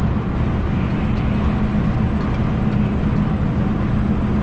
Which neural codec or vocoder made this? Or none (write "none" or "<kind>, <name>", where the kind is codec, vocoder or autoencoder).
none